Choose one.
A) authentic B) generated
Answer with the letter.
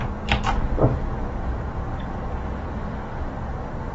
A